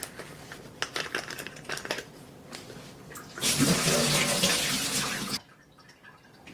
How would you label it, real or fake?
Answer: real